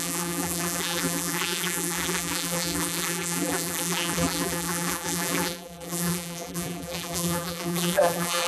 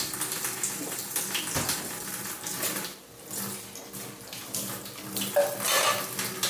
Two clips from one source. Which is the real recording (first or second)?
second